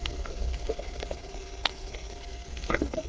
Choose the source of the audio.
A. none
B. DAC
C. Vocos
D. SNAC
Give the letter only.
D